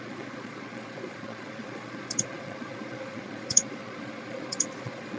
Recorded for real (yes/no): no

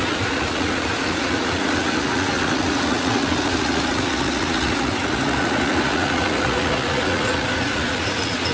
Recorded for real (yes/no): no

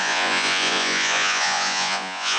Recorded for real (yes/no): no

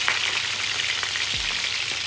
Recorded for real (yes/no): yes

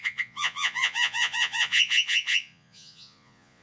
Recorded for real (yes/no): no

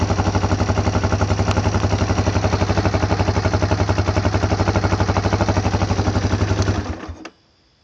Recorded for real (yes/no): yes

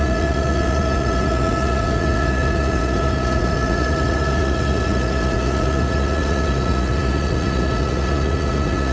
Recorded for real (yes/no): no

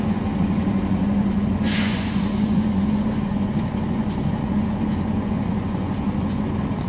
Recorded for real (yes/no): no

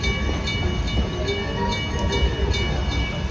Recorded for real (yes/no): yes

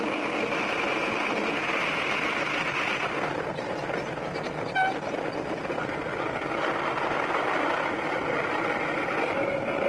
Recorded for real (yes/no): yes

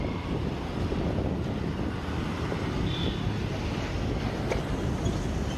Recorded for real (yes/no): yes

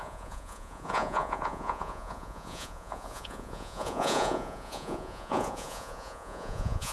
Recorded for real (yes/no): no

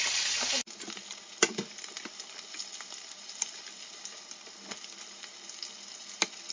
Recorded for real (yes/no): yes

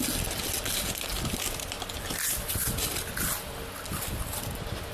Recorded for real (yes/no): yes